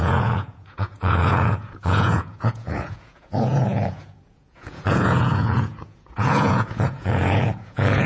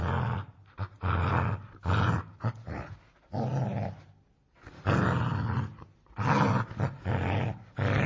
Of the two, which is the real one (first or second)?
second